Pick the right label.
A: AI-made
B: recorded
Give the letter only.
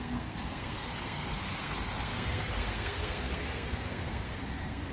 A